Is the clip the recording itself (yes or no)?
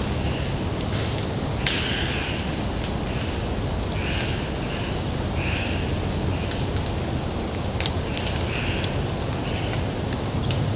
yes